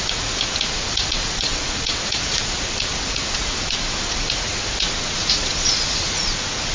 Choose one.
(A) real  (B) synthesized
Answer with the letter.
B